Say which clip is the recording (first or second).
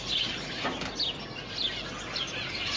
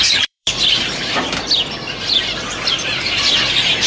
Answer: first